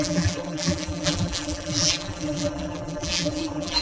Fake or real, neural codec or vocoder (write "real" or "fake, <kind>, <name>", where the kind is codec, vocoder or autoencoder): fake, vocoder, BigVGAN v2